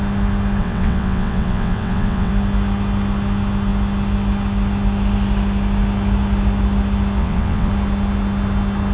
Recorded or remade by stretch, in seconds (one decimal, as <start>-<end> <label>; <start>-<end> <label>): 0.0-0.6 recorded; 0.6-2.3 remade; 2.3-7.2 recorded; 7.2-7.7 remade; 7.7-8.9 recorded